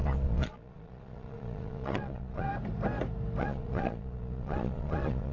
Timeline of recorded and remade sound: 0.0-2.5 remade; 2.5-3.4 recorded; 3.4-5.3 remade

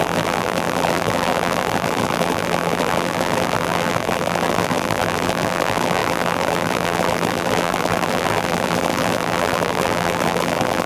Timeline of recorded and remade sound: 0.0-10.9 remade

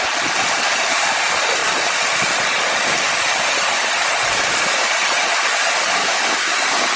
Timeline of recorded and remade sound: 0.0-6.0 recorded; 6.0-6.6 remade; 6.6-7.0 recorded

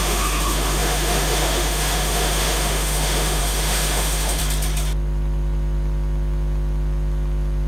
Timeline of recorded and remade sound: 0.0-4.4 remade; 4.4-7.7 recorded

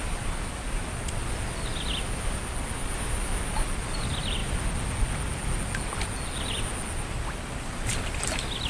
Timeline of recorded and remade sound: 0.0-8.7 recorded

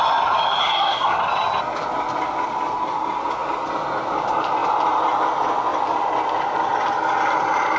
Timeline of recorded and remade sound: 0.0-0.6 recorded; 0.6-1.2 remade; 1.2-7.8 recorded